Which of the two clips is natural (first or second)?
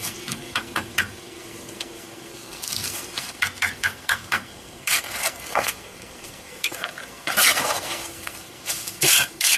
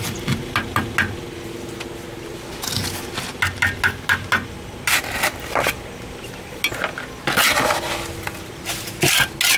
second